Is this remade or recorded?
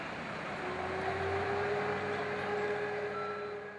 recorded